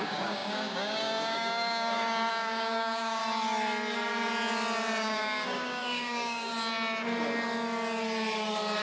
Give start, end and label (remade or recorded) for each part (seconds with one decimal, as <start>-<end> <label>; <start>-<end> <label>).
0.0-3.2 remade; 3.2-5.0 recorded; 5.0-6.5 remade; 6.5-8.8 recorded